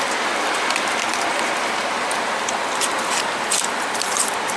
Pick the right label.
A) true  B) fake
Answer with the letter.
B